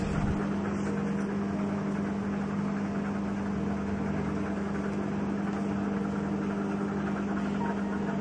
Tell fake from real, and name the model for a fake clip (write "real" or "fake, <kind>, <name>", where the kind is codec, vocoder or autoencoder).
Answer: real